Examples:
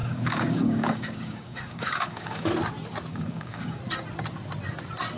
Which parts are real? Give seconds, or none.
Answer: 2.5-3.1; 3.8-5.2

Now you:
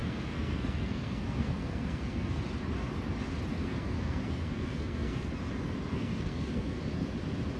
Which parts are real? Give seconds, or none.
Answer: 2.4-3.5; 5.3-5.9; 6.8-7.6

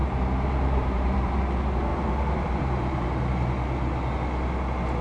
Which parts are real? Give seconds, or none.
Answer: 1.4-1.9; 3.2-5.0

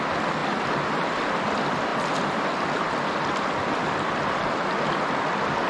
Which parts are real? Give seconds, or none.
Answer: 0.0-5.7

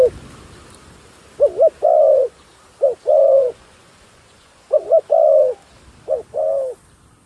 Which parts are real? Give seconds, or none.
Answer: 0.0-2.0; 2.5-3.2; 5.1-7.3

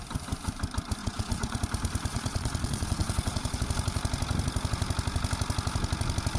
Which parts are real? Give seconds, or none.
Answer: 0.0-1.0; 1.6-2.1; 3.6-6.4

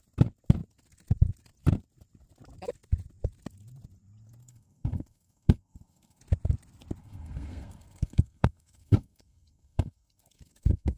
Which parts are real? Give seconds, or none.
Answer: 0.0-4.4; 6.2-7.0

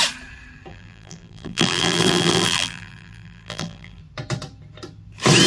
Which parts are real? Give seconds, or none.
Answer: 0.0-0.7; 4.0-5.5